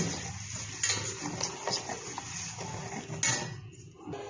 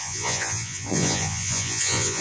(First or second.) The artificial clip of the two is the second